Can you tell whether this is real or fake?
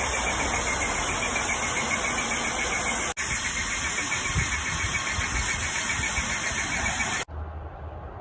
real